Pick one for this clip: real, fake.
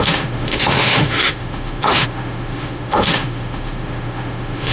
fake